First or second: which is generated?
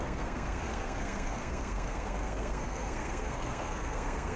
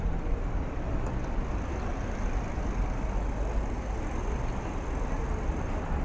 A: first